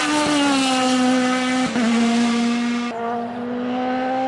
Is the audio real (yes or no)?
yes